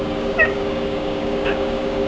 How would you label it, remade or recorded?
remade